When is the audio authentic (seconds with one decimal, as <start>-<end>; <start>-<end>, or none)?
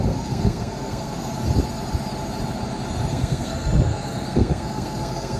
1.3-3.1